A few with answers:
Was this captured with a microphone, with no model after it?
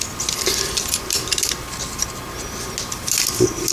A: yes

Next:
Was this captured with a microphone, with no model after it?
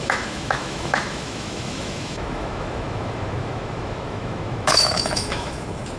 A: no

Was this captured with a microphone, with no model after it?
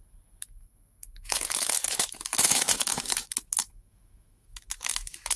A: no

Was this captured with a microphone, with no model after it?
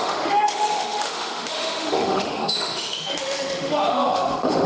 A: no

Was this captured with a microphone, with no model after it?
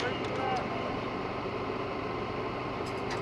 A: yes